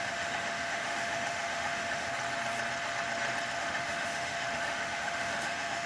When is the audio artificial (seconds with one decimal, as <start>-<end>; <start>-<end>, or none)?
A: 0.0-2.1; 3.6-5.9